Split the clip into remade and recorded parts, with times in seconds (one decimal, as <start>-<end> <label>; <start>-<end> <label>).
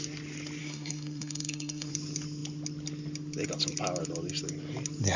0.0-0.6 recorded; 0.6-1.9 remade; 1.9-5.2 recorded